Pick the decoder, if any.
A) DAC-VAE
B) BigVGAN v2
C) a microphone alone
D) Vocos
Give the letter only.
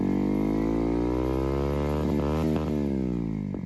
C